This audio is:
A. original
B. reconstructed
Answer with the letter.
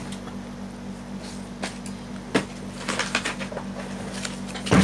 A